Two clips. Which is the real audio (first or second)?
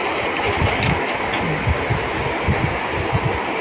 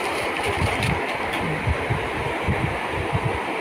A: first